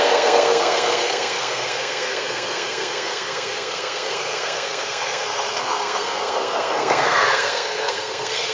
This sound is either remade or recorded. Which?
remade